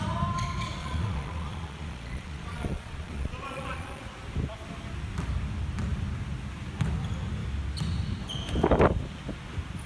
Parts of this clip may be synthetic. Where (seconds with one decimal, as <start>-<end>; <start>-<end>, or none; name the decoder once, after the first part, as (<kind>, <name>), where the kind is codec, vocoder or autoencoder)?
0.8-4.0 (vocoder, Vocos)